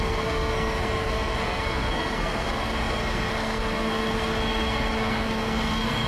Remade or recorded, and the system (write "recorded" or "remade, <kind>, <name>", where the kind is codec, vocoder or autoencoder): remade, codec, SNAC